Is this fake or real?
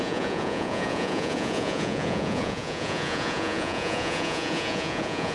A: fake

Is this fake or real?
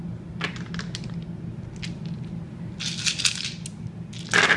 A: real